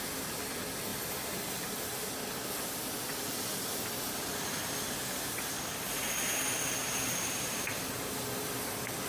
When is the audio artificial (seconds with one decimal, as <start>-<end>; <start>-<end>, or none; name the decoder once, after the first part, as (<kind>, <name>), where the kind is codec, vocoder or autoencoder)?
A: 0.9-1.7 (vocoder, BigVGAN v2); 6.8-7.7